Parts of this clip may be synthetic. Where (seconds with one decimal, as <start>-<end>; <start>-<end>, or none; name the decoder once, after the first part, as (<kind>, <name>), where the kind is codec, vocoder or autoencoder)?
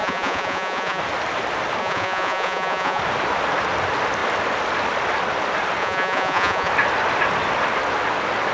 0.0-1.0 (vocoder, Vocos); 1.8-3.0; 5.8-6.7